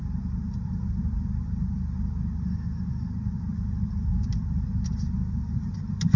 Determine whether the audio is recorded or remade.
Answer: recorded